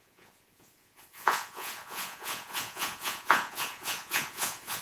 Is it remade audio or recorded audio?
remade